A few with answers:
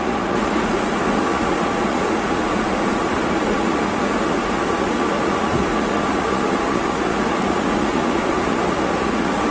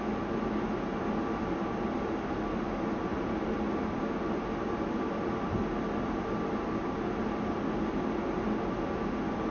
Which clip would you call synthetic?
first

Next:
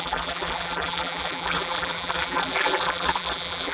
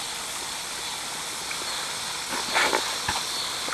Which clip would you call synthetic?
first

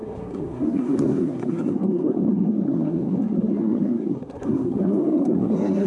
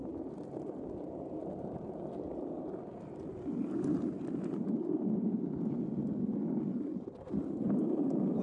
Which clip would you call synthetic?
first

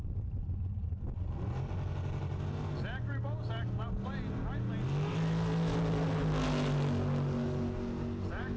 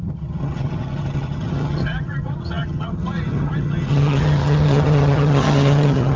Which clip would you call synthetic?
second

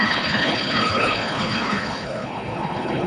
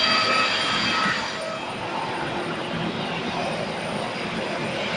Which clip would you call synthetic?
first